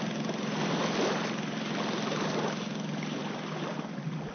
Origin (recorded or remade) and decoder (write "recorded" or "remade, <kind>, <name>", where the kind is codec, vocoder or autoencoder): recorded